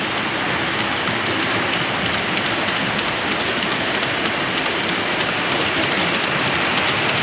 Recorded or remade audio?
recorded